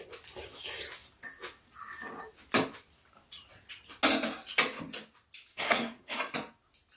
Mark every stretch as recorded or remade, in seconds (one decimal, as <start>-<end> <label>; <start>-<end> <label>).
0.0-5.5 recorded; 5.5-6.2 remade; 6.2-7.0 recorded